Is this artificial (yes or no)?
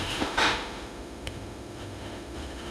yes